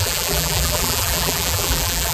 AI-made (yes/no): yes